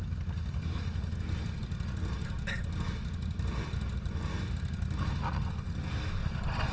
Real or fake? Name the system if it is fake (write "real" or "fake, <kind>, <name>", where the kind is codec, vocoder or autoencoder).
real